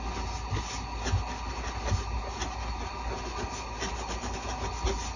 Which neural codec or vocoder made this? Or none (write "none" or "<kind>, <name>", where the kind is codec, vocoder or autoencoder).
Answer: none